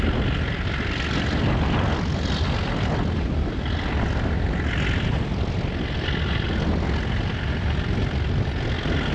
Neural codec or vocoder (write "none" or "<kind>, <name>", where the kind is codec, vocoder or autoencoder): none